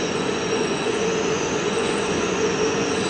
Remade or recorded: remade